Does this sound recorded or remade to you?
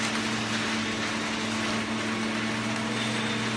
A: recorded